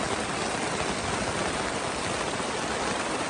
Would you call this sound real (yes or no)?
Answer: yes